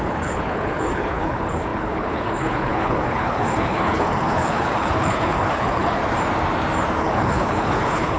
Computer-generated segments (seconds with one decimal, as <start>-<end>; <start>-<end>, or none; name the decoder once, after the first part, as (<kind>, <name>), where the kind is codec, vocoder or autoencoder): 0.0-6.0 (codec, HILCodec); 7.0-8.2

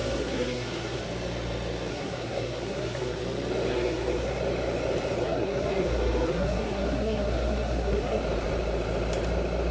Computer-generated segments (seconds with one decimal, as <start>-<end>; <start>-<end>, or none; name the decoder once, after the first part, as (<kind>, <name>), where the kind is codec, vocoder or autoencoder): 0.0-1.0 (codec, SNAC); 1.9-3.2; 3.7-4.4; 5.2-8.2

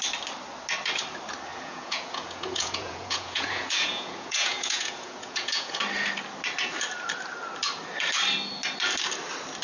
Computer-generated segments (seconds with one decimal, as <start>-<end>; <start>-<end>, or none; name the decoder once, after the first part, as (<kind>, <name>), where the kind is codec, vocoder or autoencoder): 1.5-5.8 (vocoder, Vocos)